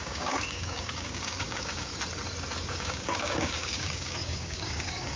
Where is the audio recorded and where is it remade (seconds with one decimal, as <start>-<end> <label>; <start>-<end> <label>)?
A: 0.0-1.9 remade; 1.9-2.7 recorded; 2.7-5.2 remade